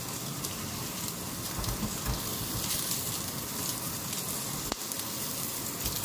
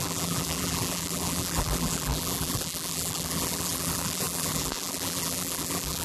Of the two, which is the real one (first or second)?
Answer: first